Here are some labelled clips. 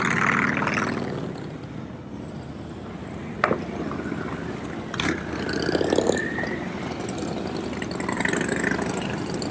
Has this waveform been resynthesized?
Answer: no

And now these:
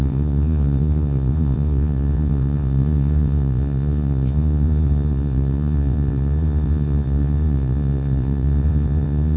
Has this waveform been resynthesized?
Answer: yes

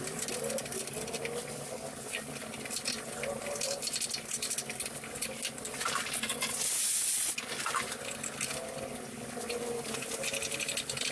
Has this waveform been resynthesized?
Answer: no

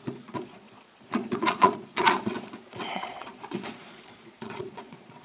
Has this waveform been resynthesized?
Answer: yes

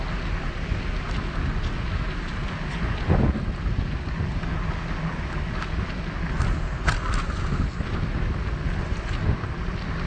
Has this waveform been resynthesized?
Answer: no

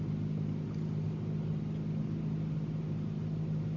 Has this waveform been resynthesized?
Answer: no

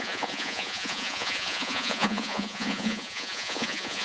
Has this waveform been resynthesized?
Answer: yes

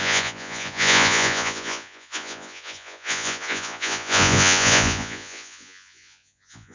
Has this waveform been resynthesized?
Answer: yes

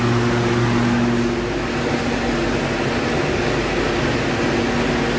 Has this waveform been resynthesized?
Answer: no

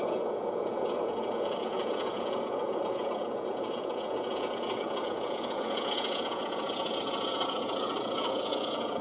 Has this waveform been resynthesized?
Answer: yes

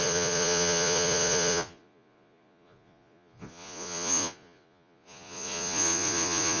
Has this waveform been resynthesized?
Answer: yes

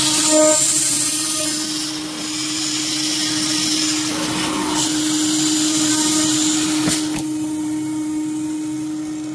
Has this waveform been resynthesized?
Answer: no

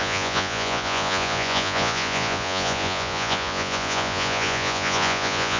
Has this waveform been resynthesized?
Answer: yes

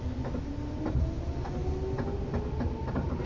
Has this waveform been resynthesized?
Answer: no